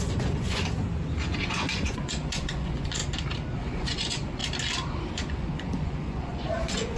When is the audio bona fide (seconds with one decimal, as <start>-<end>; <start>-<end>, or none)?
0.6-1.4; 3.0-3.6; 4.4-5.1